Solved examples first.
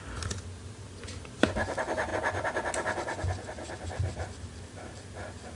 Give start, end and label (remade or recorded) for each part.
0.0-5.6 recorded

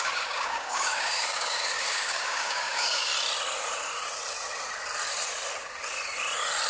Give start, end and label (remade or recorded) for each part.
0.0-3.1 remade; 3.1-6.7 recorded

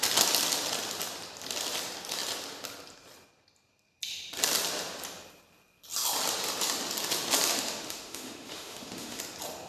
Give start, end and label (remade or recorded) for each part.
0.0-7.5 recorded; 7.5-9.2 remade; 9.2-9.7 recorded

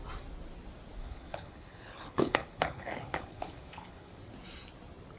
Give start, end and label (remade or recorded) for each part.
0.0-1.0 recorded; 1.0-4.1 remade; 4.1-5.2 recorded

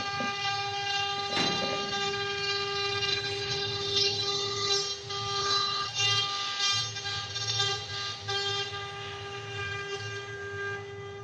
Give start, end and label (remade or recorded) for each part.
0.0-3.1 recorded; 3.1-4.7 remade; 4.7-5.4 recorded; 5.4-6.0 remade; 6.0-11.2 recorded

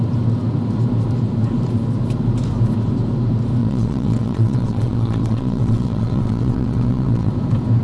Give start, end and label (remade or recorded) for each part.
0.0-3.6 recorded; 3.6-7.3 remade; 7.3-7.8 recorded

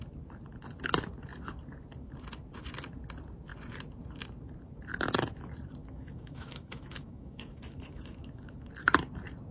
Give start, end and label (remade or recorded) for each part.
0.0-5.8 recorded; 5.8-8.7 remade; 8.7-9.5 recorded